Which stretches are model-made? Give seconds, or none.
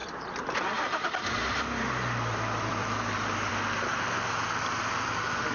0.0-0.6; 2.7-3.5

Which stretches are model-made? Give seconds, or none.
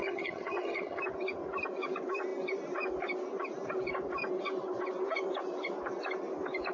0.0-1.0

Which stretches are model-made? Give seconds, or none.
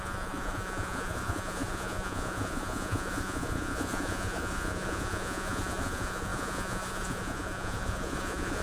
0.0-8.6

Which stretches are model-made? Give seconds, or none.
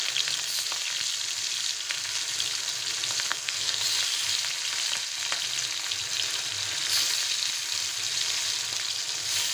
3.3-3.8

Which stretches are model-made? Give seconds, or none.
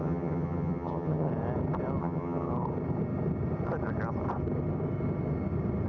0.0-1.3; 2.0-2.5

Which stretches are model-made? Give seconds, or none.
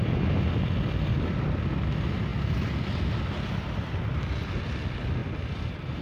none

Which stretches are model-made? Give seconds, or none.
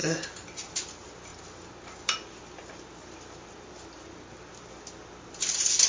none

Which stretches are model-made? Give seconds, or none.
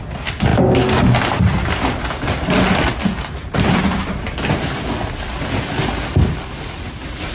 none